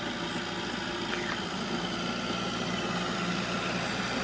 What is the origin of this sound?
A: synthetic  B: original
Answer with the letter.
B